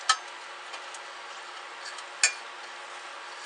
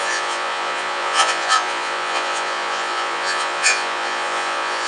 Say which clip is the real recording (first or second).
first